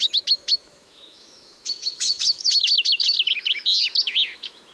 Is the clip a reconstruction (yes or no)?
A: yes